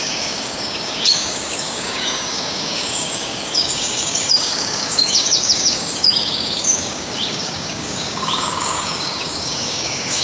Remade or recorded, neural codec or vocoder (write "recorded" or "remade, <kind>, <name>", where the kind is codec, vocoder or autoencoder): remade, codec, DAC